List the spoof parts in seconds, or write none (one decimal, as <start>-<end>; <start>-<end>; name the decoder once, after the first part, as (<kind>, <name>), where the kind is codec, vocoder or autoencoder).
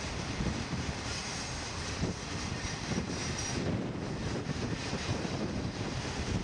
0.0-1.2 (vocoder, BigVGAN v2); 1.8-3.2; 4.1-6.4